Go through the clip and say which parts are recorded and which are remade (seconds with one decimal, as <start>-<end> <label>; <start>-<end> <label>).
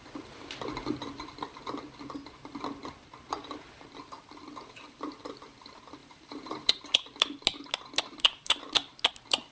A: 0.0-6.0 recorded; 6.0-6.8 remade; 6.8-8.1 recorded; 8.1-8.8 remade; 8.8-9.5 recorded